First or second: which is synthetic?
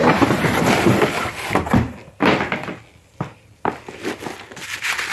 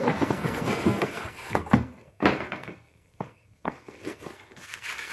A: second